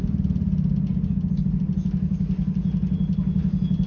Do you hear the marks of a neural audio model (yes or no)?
no